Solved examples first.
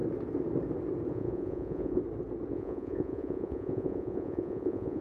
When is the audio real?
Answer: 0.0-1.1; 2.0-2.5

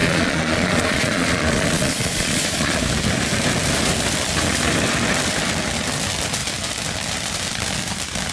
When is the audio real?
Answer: 2.8-8.3